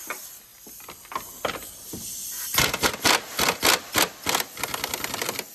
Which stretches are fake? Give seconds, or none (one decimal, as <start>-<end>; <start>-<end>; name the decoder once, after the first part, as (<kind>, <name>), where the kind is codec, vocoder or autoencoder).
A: none